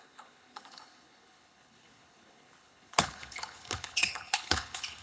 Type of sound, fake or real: fake